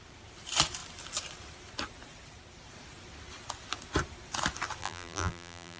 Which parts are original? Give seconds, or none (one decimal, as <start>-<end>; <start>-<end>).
0.0-4.8